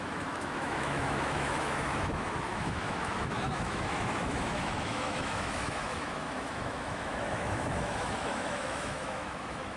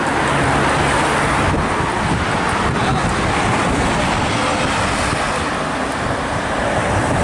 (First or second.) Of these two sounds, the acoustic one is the second